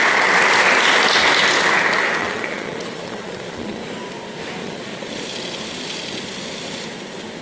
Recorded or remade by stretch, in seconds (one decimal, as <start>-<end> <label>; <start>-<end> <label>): 0.0-2.2 recorded; 2.2-3.8 remade; 3.8-4.6 recorded; 4.6-5.2 remade; 5.2-7.4 recorded